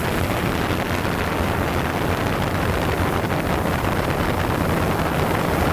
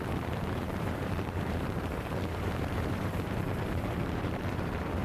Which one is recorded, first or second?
first